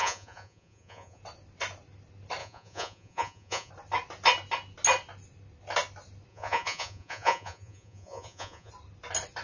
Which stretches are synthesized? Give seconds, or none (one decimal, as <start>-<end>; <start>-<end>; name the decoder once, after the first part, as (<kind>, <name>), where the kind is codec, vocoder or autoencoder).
0.0-1.2 (vocoder, Vocos); 2.4-3.7; 6.3-8.7